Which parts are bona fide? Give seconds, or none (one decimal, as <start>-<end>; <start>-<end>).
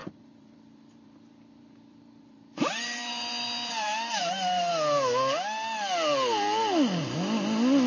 4.7-7.9